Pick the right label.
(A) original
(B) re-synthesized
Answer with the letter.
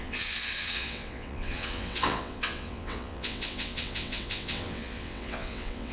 B